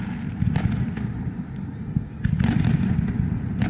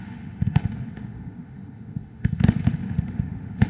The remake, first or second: second